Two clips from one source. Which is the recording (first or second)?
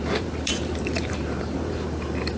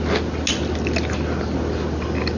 second